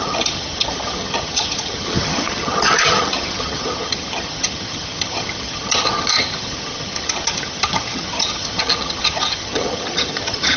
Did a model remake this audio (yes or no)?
yes